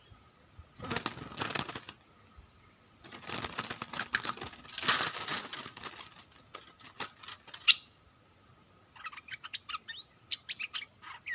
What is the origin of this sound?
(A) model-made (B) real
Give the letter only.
B